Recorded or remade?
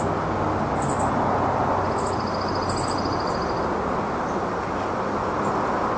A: recorded